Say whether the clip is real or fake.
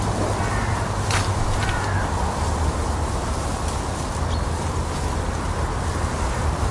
fake